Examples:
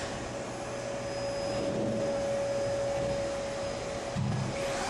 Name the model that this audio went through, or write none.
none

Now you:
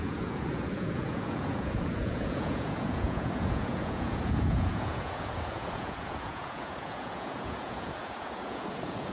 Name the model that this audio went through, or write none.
vocoder, Vocos